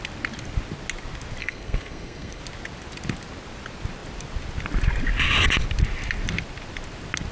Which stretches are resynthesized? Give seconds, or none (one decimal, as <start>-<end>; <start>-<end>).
1.4-2.4